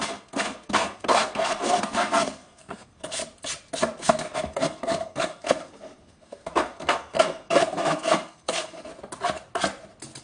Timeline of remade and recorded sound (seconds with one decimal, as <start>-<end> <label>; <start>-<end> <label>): 0.0-3.2 remade; 3.2-4.0 recorded; 4.0-8.9 remade; 8.9-10.2 recorded